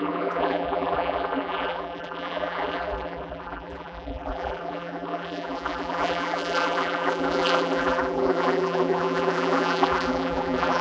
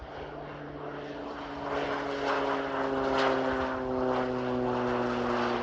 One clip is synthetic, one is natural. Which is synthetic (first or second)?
first